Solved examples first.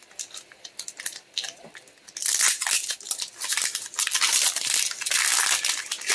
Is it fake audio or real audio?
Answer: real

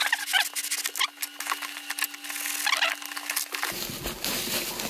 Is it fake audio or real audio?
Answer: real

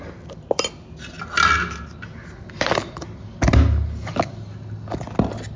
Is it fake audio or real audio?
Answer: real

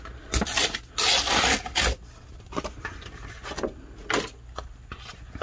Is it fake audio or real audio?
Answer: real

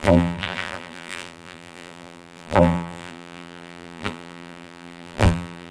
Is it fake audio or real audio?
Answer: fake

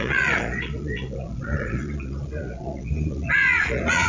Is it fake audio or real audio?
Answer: fake